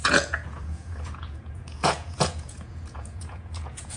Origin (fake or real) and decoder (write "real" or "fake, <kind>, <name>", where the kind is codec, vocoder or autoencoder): fake, vocoder, Vocos